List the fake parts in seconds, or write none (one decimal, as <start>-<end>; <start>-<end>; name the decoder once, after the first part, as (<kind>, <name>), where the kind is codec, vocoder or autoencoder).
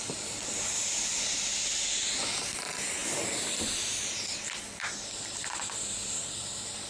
0.0-6.9 (vocoder, BigVGAN v2)